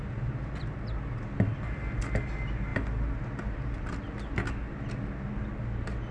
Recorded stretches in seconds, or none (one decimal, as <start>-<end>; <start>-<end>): 0.0-6.1